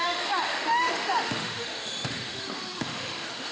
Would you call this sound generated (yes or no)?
yes